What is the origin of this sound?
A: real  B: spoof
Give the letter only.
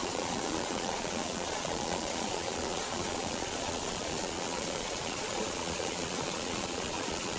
B